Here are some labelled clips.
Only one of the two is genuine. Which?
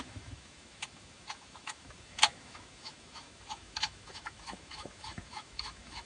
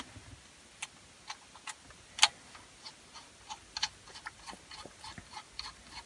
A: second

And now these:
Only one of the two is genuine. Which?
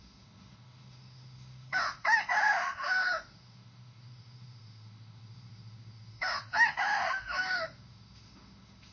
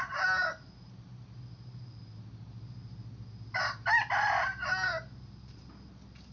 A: second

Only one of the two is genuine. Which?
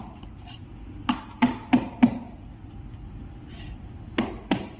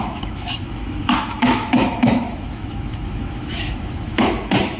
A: first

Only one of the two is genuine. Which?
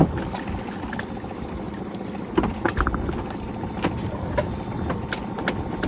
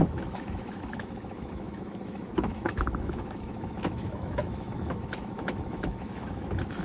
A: first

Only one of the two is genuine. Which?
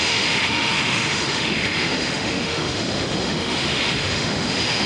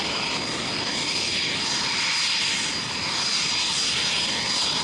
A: second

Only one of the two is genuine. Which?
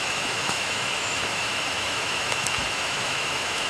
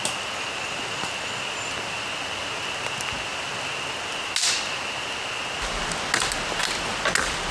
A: second